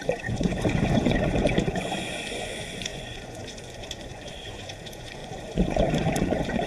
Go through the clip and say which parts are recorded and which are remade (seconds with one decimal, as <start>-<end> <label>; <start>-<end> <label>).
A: 0.0-6.7 remade